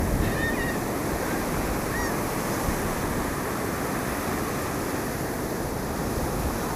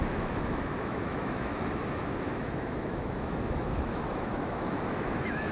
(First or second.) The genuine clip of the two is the first